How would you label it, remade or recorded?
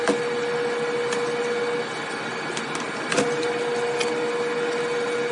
recorded